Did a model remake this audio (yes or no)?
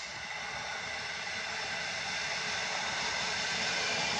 no